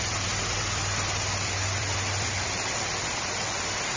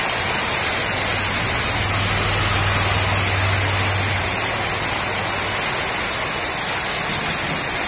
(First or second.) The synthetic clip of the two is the first